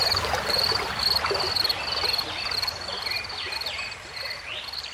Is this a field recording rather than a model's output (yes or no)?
yes